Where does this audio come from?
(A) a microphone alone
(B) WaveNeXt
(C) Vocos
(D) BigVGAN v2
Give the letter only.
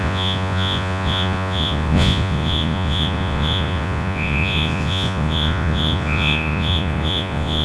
C